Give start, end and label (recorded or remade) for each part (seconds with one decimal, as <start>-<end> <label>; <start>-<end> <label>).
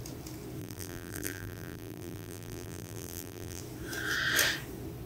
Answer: 0.0-0.6 recorded; 0.6-3.6 remade; 3.6-5.1 recorded